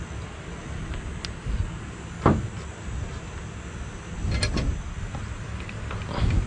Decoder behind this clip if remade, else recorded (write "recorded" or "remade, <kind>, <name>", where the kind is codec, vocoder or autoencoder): recorded